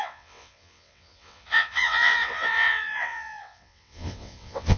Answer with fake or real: fake